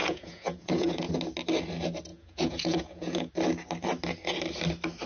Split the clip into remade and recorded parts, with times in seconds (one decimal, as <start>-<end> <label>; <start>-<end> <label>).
0.0-1.1 remade; 1.1-2.1 recorded; 2.1-3.3 remade; 3.3-5.1 recorded